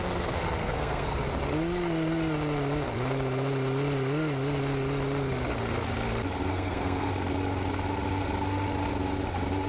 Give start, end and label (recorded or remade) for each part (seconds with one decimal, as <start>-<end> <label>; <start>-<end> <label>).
0.0-0.6 recorded; 0.6-1.2 remade; 1.2-6.5 recorded; 6.5-7.1 remade; 7.1-9.7 recorded